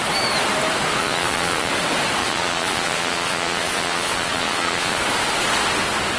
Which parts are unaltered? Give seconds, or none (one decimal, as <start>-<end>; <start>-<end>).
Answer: 0.0-1.0; 1.7-2.2; 5.0-6.2